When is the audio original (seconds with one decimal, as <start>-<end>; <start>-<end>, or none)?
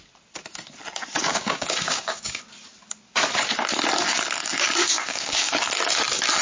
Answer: 0.0-1.3; 2.4-4.8; 5.5-6.4